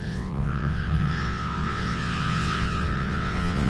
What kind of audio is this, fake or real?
fake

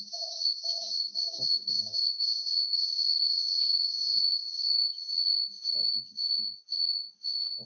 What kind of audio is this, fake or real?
fake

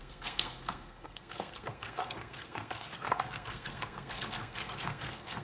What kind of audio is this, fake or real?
fake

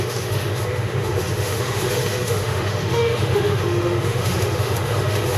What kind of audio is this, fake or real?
fake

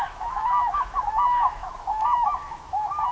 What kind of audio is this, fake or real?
fake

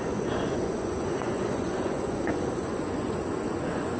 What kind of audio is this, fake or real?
fake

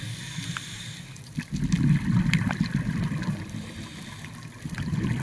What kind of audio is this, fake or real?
real